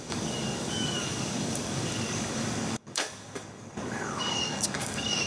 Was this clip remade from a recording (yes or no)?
yes